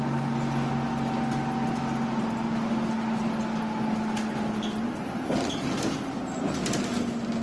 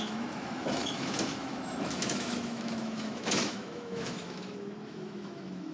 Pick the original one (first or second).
first